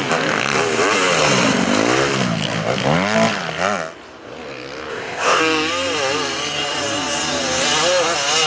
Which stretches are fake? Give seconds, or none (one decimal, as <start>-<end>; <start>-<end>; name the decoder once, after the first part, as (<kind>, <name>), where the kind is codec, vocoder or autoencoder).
4.9-5.4 (codec, ZipCodec)